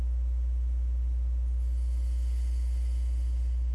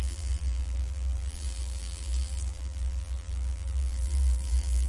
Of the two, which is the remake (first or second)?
second